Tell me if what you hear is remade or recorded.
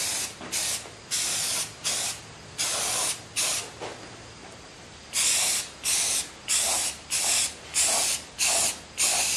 recorded